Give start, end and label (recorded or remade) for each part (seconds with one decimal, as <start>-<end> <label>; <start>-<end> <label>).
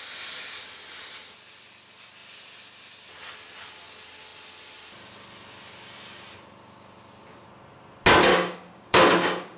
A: 0.0-8.3 recorded; 8.3-9.6 remade